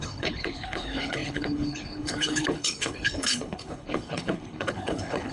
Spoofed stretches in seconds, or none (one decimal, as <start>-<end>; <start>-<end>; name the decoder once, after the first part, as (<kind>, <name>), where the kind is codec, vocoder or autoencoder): 0.0-5.3 (codec, HILCodec)